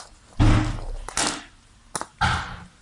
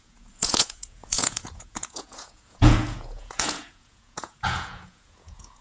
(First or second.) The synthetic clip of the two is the second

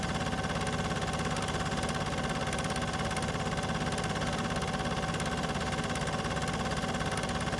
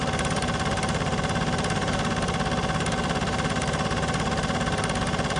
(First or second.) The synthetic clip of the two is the second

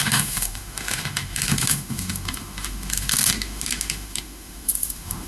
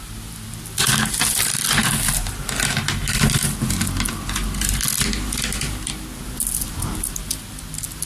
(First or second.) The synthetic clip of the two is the first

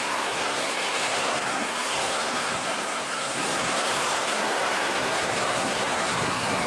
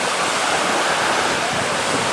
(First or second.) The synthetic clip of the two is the first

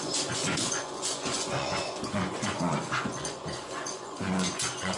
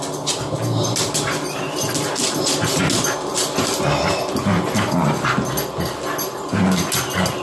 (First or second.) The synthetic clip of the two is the first